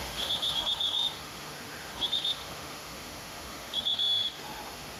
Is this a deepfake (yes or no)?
yes